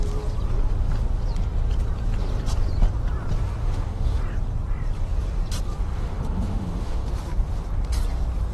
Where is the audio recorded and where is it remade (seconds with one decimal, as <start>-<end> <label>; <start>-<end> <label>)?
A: 0.0-3.6 recorded; 3.6-4.2 remade; 4.2-5.9 recorded; 5.9-7.1 remade; 7.1-8.5 recorded